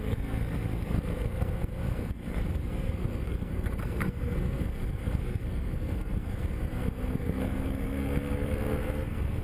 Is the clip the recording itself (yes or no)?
no